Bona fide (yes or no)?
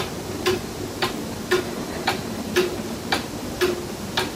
yes